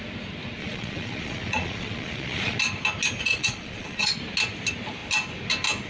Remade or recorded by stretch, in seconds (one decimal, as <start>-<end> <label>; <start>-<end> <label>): 0.0-0.6 recorded; 0.6-2.6 remade; 2.6-3.3 recorded; 3.3-4.2 remade; 4.2-5.9 recorded